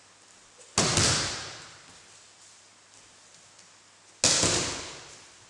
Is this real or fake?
real